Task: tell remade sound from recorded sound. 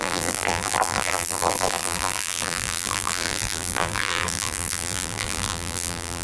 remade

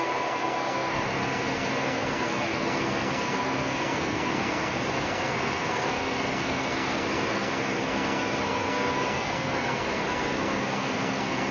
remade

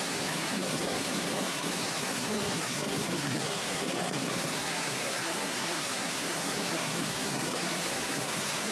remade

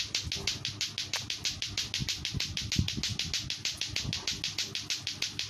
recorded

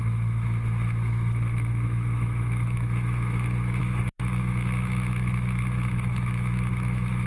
remade